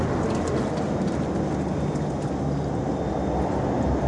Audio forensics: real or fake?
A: real